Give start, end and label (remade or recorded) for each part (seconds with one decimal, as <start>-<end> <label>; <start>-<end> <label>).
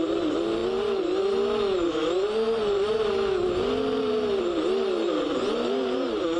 0.0-6.4 recorded